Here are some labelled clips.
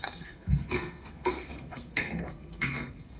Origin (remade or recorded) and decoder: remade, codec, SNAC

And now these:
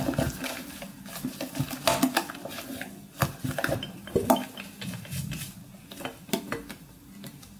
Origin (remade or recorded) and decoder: recorded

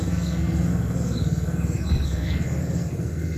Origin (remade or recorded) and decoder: remade, codec, SNAC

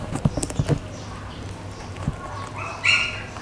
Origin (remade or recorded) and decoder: recorded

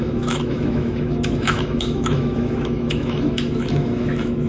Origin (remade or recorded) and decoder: remade, autoencoder, DAC-VAE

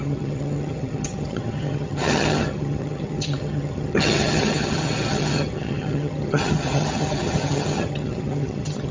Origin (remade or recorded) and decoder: remade, vocoder, HiFi-GAN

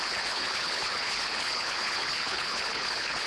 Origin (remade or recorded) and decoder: remade, codec, HILCodec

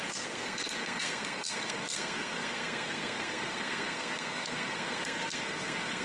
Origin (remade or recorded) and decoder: remade, codec, SNAC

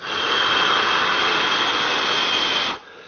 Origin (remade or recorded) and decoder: recorded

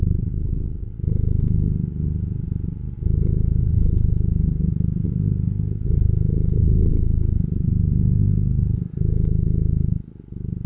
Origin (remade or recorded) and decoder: recorded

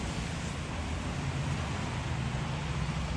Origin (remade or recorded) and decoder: recorded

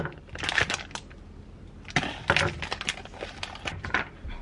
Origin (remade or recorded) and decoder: recorded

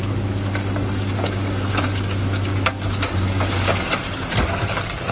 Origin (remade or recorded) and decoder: remade, codec, DAC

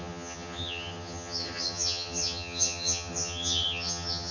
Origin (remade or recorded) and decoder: remade, vocoder, HiFi-GAN